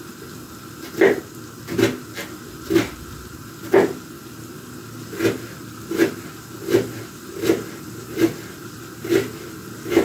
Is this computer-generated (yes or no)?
no